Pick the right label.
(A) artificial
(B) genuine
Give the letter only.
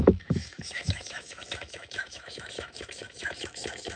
A